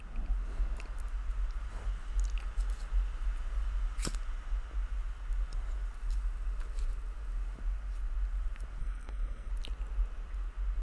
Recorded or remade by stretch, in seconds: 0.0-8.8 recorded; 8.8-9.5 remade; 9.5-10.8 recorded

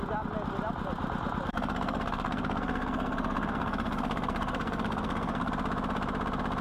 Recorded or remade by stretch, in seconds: 0.0-1.5 recorded; 1.5-5.5 remade; 5.5-6.6 recorded

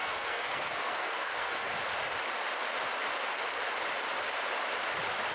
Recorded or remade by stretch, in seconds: 0.0-1.7 remade; 1.7-5.3 recorded